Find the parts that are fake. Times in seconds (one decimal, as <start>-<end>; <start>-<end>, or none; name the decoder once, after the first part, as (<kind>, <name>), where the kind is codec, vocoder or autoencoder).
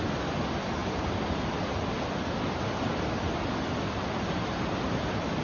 none